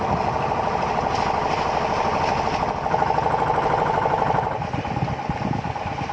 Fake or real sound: real